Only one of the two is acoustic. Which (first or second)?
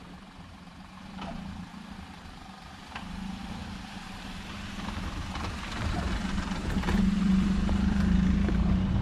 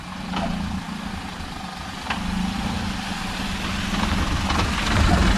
second